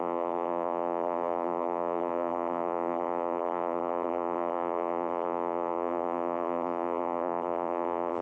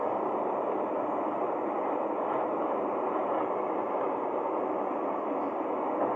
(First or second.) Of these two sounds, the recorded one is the second